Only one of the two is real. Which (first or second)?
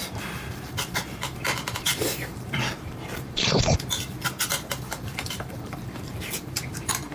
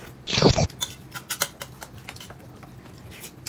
second